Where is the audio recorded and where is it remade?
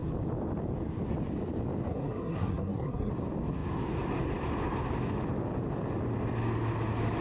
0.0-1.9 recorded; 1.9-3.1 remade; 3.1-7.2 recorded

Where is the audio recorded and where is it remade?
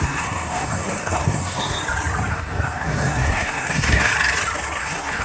0.0-1.8 remade; 1.8-2.3 recorded; 2.3-4.1 remade; 4.1-4.8 recorded; 4.8-5.2 remade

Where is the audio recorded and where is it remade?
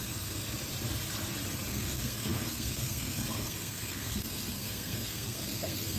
0.0-0.4 remade; 0.4-1.7 recorded; 1.7-6.0 remade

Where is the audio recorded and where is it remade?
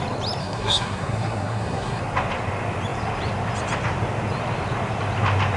0.0-0.4 recorded; 0.4-2.0 remade; 2.0-5.6 recorded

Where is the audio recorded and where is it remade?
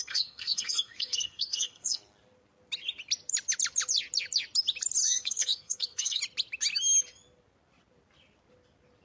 0.0-2.0 remade; 2.0-5.0 recorded; 5.0-6.2 remade; 6.2-9.0 recorded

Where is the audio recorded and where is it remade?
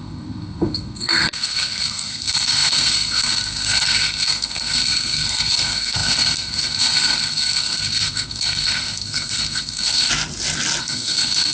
0.0-10.1 remade; 10.1-10.8 recorded; 10.8-11.5 remade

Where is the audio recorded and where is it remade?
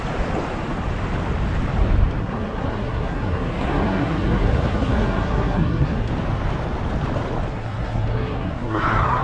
0.0-2.2 recorded; 2.2-6.1 remade; 6.1-7.5 recorded; 7.5-9.2 remade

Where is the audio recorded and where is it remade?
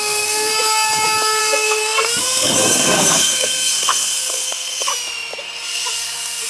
0.0-0.5 remade; 0.5-1.4 recorded; 1.4-4.9 remade; 4.9-5.4 recorded; 5.4-6.5 remade